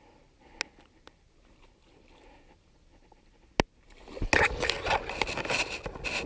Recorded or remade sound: recorded